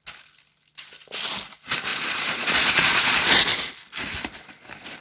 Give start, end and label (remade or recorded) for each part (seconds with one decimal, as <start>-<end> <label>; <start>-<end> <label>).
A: 0.0-1.9 recorded; 1.9-3.6 remade; 3.6-5.0 recorded